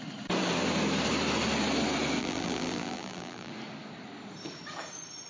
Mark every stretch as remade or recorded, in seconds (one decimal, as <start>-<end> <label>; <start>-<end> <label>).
0.0-2.2 recorded; 2.2-3.5 remade; 3.5-5.3 recorded